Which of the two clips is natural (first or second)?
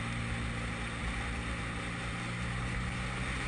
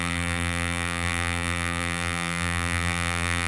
first